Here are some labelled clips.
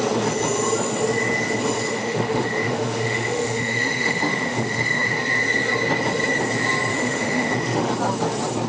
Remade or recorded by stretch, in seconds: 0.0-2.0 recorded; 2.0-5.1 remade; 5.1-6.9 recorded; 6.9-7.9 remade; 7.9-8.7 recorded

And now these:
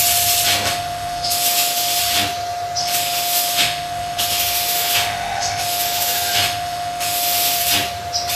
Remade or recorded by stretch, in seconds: 0.0-0.7 recorded; 0.7-2.0 remade; 2.0-2.8 recorded; 2.8-7.6 remade; 7.6-8.4 recorded

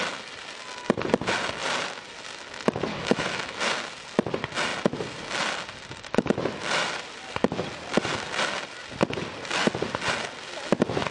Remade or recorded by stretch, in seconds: 0.0-2.9 recorded; 2.9-3.6 remade; 3.6-11.1 recorded

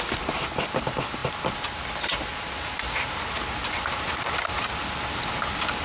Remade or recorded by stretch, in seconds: 0.0-5.8 recorded

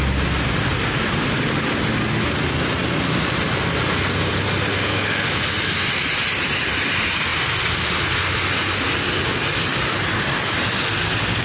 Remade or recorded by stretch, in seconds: 0.0-4.7 recorded; 4.7-5.3 remade; 5.3-11.4 recorded

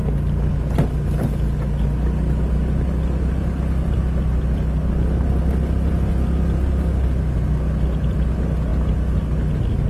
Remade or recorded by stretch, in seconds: 0.0-9.9 recorded

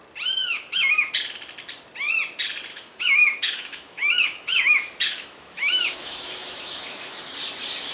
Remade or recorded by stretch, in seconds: 0.0-0.4 recorded; 0.4-1.1 remade; 1.1-2.7 recorded; 2.7-7.2 remade; 7.2-7.9 recorded

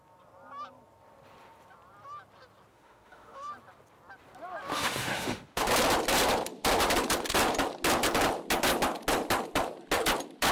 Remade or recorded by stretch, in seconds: 0.0-2.7 recorded; 2.7-3.5 remade; 3.5-4.7 recorded; 4.7-5.7 remade; 5.7-10.5 recorded